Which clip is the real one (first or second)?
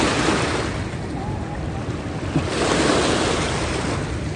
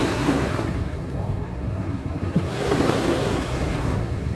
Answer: first